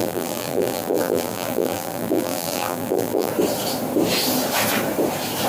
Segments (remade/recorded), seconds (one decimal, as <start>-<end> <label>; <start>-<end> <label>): 0.0-3.3 remade; 3.3-5.5 recorded